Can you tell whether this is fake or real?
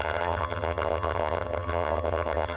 fake